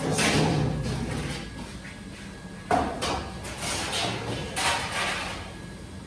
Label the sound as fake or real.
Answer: real